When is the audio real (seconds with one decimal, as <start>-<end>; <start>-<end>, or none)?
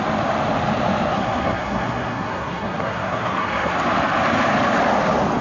0.0-1.1; 3.8-5.4